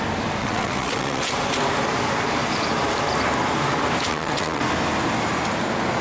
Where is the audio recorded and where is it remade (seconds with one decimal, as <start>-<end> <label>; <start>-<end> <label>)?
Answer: 0.0-0.4 recorded; 0.4-1.3 remade; 1.3-4.1 recorded; 4.1-4.6 remade; 4.6-6.0 recorded